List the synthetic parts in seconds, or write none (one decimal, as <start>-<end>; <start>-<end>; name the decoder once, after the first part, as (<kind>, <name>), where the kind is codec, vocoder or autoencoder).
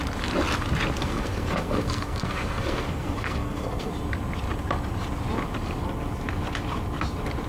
1.0-3.9 (codec, SNAC)